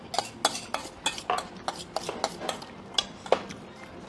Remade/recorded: recorded